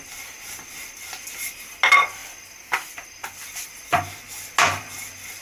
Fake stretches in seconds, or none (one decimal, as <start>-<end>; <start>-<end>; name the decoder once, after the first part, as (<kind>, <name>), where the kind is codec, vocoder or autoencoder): none